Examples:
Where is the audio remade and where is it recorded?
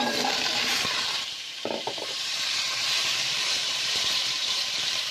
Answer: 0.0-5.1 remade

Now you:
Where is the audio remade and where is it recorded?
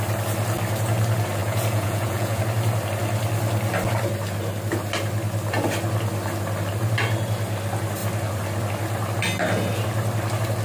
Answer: 0.0-1.4 recorded; 1.4-2.4 remade; 2.4-10.6 recorded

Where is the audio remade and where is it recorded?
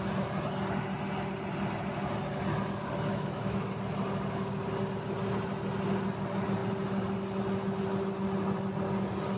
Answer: 0.0-3.1 recorded; 3.1-3.7 remade; 3.7-9.4 recorded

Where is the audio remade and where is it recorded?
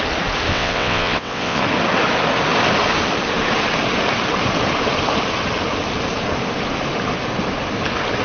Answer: 0.0-0.5 recorded; 0.5-1.6 remade; 1.6-8.2 recorded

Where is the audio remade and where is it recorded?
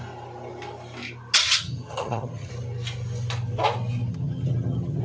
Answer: 0.0-1.4 recorded; 1.4-2.5 remade; 2.5-4.1 recorded; 4.1-5.0 remade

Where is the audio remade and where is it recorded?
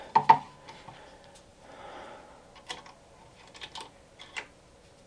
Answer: 0.0-5.1 recorded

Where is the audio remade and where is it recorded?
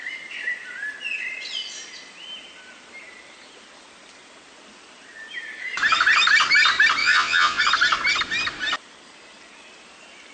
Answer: 0.0-7.0 recorded; 7.0-7.6 remade; 7.6-10.3 recorded